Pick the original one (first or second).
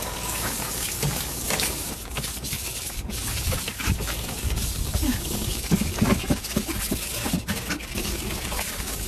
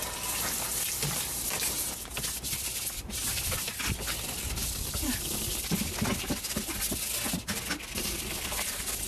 second